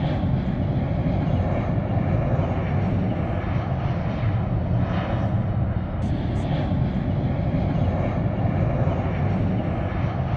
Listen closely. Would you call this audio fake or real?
real